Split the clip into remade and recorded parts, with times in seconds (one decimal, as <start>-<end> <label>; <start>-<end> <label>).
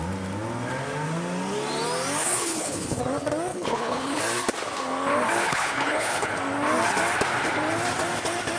0.0-2.2 recorded; 2.2-3.0 remade; 3.0-3.5 recorded; 3.5-4.2 remade; 4.2-5.4 recorded; 5.4-6.4 remade; 6.4-8.6 recorded